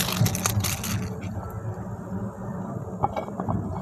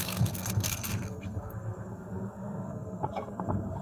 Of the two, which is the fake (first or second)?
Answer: second